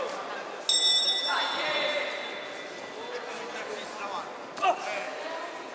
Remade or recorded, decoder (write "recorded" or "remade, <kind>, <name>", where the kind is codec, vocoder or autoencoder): recorded